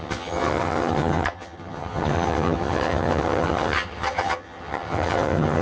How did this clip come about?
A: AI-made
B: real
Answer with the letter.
A